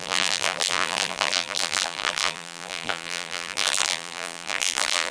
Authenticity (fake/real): fake